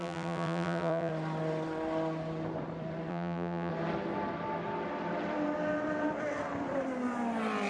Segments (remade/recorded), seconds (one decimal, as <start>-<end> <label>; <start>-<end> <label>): 0.0-1.1 remade; 1.1-3.1 recorded; 3.1-3.7 remade; 3.7-7.7 recorded